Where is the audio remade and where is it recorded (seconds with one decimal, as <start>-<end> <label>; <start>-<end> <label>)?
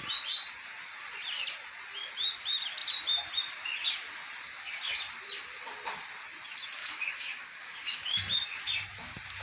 0.0-6.8 recorded; 6.8-8.2 remade; 8.2-9.4 recorded